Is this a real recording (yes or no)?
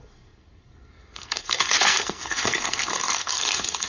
no